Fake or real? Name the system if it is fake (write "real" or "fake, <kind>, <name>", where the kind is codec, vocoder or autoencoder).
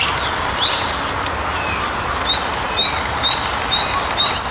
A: real